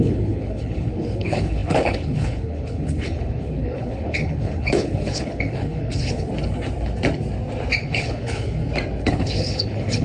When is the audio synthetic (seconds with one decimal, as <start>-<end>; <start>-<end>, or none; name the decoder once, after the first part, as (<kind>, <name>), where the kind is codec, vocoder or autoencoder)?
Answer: 0.0-6.3 (codec, HILCodec); 7.8-8.6; 9.1-10.0